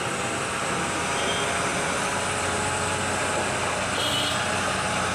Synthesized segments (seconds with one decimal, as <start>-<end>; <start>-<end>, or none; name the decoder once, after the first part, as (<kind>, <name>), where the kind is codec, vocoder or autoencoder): none